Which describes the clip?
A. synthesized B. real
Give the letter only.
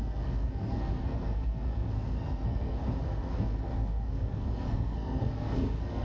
A